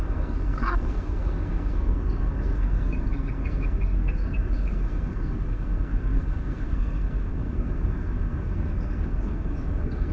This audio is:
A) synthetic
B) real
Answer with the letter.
A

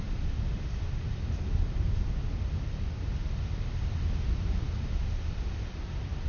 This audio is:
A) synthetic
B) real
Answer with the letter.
B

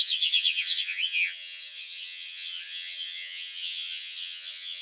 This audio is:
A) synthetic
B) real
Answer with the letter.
A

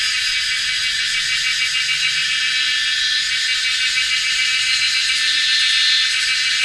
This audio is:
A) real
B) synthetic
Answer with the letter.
A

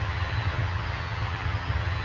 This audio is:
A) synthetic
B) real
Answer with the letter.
A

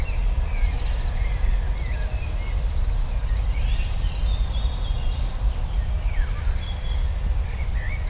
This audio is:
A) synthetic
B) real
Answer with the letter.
B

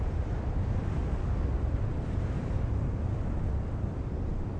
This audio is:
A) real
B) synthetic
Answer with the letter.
A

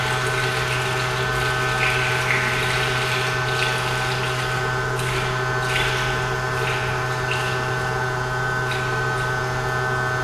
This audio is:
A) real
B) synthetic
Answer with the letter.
A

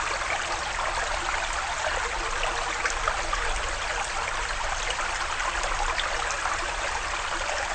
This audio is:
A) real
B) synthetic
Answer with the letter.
A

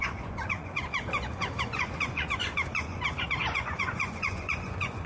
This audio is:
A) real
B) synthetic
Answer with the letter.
B